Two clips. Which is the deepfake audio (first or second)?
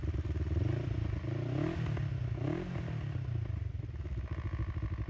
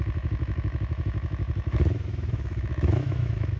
second